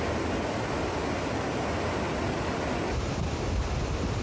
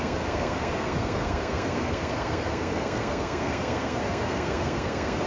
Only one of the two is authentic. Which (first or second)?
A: first